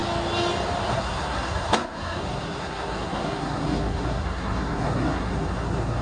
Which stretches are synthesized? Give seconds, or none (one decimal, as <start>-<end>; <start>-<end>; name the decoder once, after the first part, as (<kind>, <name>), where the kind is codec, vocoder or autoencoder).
0.8-6.0 (codec, SNAC)